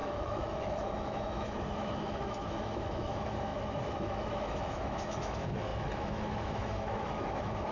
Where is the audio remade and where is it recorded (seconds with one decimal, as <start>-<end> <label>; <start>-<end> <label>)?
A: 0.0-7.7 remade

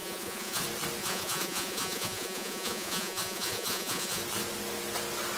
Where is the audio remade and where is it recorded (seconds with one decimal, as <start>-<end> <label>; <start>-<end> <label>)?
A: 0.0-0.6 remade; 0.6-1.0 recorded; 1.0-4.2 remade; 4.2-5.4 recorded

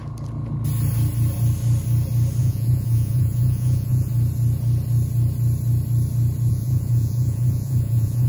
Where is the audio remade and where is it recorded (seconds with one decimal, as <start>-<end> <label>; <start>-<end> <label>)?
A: 0.0-2.4 recorded; 2.4-4.1 remade; 4.1-6.5 recorded; 6.5-8.3 remade

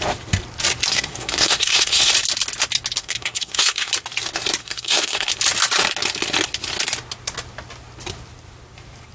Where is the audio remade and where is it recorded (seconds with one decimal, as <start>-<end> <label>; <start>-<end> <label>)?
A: 0.0-0.9 recorded; 0.9-2.1 remade; 2.1-3.0 recorded; 3.0-3.9 remade; 3.9-4.6 recorded; 4.6-5.3 remade; 5.3-9.1 recorded

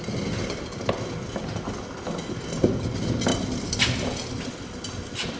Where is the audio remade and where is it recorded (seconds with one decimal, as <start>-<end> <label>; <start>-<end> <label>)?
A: 0.0-5.4 recorded